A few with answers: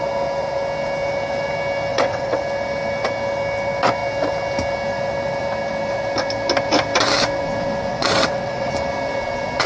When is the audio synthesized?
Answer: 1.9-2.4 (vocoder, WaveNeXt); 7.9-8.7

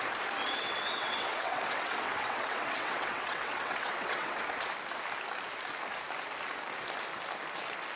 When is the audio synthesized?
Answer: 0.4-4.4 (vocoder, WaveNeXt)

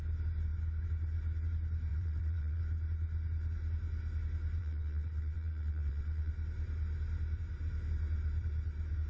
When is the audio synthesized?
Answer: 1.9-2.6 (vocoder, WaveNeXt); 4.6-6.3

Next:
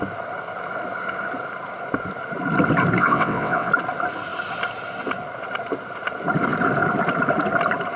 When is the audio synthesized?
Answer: 3.0-3.7 (vocoder, WaveNeXt)